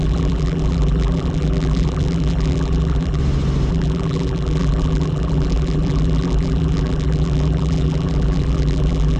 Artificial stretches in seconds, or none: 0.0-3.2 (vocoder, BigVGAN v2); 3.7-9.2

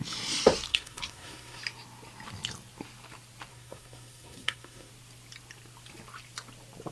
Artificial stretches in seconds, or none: 0.7-1.6 (codec, SNAC); 3.5-4.9

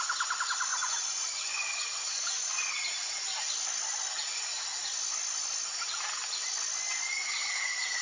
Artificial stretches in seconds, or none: 0.7-2.7 (vocoder, Vocos)